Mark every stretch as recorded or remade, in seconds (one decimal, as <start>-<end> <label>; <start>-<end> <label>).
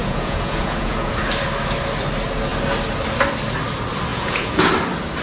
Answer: 0.0-1.1 remade; 1.1-4.1 recorded; 4.1-4.7 remade; 4.7-5.2 recorded